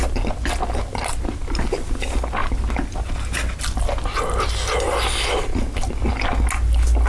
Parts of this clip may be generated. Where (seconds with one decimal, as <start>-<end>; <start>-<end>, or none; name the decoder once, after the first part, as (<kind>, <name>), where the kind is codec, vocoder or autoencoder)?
none